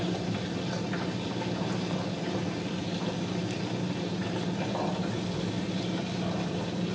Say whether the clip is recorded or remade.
recorded